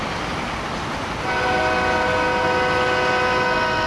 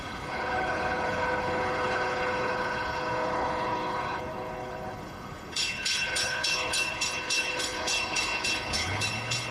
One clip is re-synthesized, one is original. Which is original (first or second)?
first